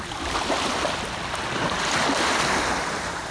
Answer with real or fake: real